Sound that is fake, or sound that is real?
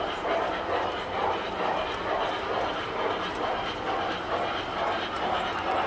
real